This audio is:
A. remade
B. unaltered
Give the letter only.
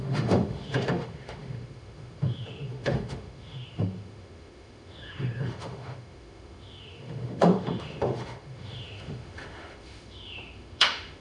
A